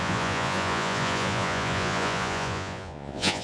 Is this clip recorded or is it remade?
remade